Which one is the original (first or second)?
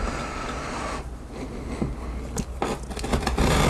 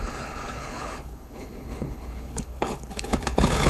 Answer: first